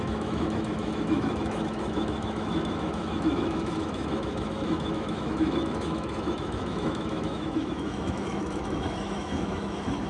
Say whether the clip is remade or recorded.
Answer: remade